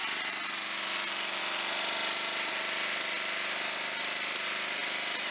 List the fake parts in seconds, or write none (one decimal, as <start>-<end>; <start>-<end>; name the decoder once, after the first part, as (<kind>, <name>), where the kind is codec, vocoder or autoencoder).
none